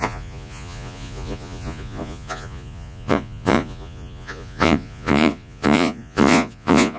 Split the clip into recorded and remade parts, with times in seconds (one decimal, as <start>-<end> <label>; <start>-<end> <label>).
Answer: 0.0-7.0 remade